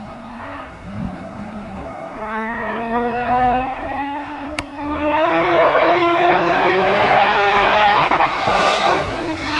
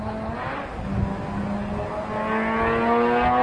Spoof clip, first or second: first